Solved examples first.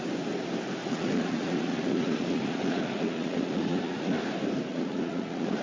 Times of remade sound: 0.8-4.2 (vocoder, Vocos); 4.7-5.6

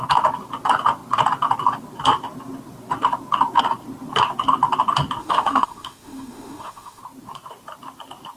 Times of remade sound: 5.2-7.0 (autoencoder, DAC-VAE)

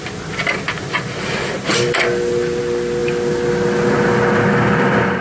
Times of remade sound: 1.7-2.6 (vocoder, BigVGAN v2); 3.0-4.2

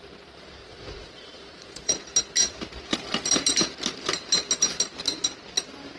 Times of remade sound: 0.6-2.0 (vocoder, Vocos)